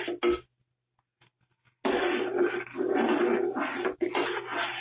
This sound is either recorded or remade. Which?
recorded